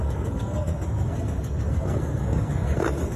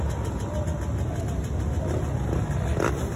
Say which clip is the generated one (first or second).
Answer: first